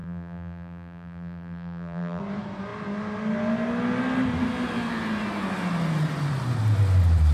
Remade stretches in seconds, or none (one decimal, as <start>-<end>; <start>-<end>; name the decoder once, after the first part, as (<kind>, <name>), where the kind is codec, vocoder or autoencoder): 0.0-2.2 (vocoder, BigVGAN v2)